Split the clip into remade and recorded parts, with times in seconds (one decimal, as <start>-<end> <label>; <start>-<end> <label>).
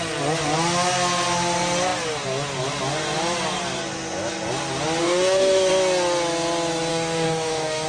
0.0-5.0 recorded; 5.0-5.7 remade; 5.7-6.9 recorded; 6.9-7.9 remade